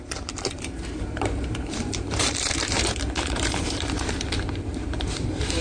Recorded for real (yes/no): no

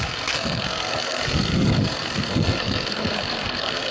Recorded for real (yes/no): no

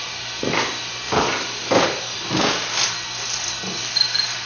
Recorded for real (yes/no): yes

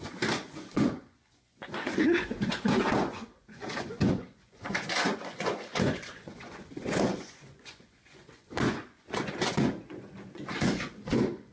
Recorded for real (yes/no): no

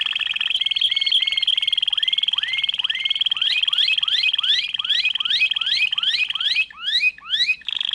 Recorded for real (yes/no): yes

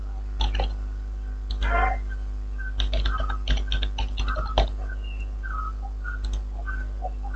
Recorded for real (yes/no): yes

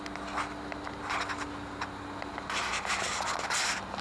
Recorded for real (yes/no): yes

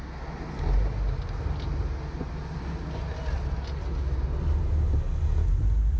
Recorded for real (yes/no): yes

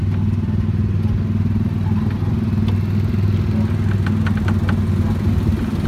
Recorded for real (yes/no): yes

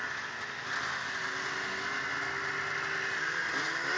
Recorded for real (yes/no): yes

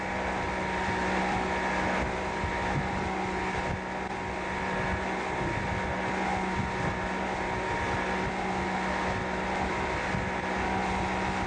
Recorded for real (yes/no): yes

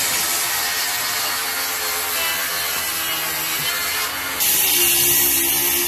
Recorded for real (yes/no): yes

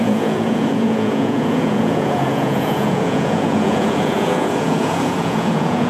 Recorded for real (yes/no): no